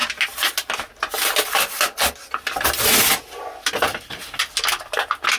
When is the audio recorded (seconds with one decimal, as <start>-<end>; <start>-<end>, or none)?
0.0-3.9; 4.4-5.4